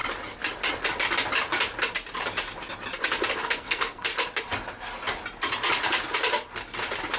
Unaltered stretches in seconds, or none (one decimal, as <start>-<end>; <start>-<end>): 0.0-3.3; 4.1-7.2

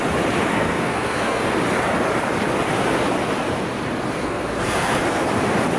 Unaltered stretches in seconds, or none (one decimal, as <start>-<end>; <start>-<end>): 0.0-0.5; 1.4-4.2; 5.2-5.8

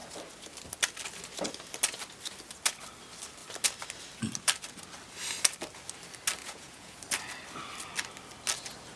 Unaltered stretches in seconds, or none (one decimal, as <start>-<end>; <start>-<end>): 0.0-6.4; 7.0-9.0

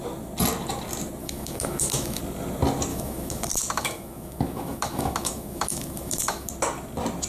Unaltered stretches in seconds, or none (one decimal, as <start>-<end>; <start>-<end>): 0.0-1.2; 2.2-2.9; 6.5-7.3

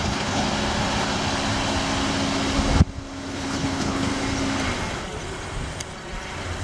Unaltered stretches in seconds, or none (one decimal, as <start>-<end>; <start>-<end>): 0.4-3.3; 4.1-6.6

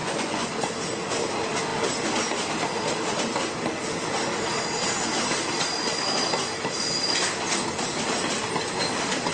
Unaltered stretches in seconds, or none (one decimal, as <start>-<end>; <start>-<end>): 0.5-9.3

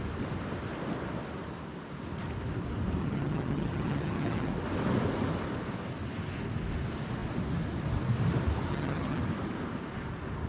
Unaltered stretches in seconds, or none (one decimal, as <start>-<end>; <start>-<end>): 0.0-3.0; 4.5-8.7; 9.2-10.5